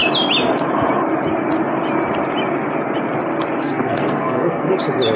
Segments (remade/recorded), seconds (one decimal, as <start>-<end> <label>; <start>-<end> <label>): 0.0-3.6 recorded; 3.6-4.8 remade; 4.8-5.2 recorded